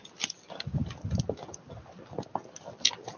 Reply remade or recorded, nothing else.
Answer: recorded